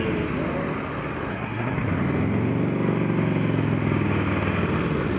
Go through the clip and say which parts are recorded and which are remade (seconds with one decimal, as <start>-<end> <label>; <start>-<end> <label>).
0.0-1.3 recorded; 1.3-1.9 remade; 1.9-5.2 recorded